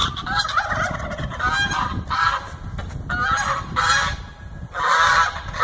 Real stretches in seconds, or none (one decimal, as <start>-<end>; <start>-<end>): 0.0-5.6